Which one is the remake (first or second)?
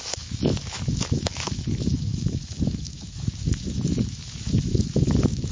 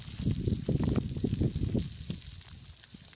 first